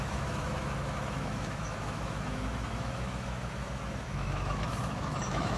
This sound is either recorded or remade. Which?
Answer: remade